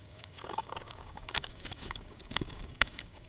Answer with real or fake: fake